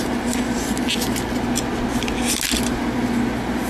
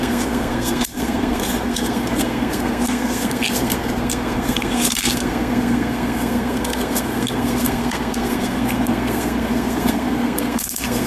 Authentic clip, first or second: first